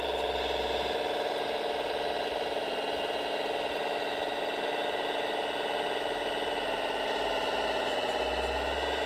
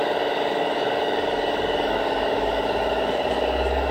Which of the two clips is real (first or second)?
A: first